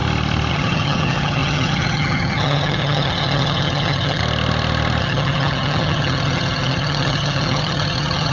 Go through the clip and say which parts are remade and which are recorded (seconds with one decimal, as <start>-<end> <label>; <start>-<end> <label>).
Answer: 0.0-0.5 recorded; 0.5-4.2 remade; 4.2-5.0 recorded; 5.0-8.3 remade